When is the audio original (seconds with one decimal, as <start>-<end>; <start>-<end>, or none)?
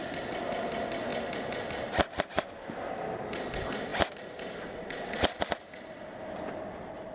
0.0-7.1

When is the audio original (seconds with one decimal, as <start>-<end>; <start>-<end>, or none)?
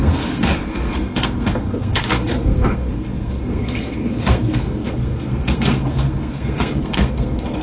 none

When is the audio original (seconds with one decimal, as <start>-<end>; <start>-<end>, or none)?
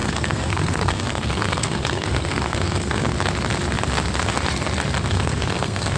3.1-5.1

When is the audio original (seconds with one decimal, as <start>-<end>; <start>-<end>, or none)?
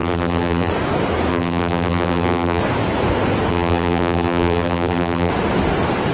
0.7-1.3; 2.6-3.5; 5.3-6.1